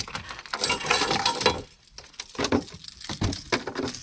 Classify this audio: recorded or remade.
recorded